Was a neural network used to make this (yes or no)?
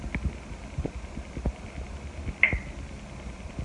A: no